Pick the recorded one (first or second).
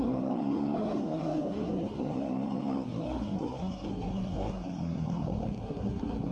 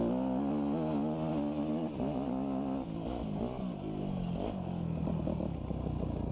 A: second